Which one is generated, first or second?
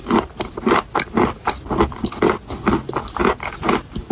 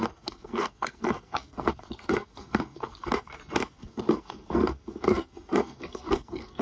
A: second